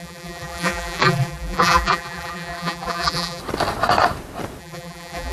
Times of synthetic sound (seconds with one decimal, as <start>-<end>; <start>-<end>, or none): 0.0-3.4; 4.6-5.3